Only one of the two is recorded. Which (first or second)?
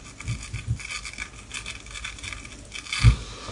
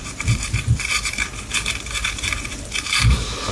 first